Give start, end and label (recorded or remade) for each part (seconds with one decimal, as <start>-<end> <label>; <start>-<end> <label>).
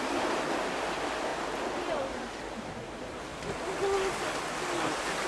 0.0-1.3 remade; 1.3-2.1 recorded; 2.1-3.3 remade; 3.3-5.3 recorded